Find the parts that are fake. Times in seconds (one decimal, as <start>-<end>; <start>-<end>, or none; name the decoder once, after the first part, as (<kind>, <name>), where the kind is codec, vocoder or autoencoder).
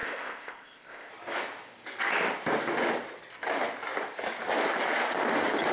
0.0-1.1 (codec, ZipCodec)